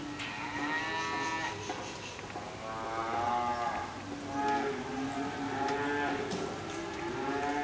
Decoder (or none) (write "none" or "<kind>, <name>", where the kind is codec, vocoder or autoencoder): none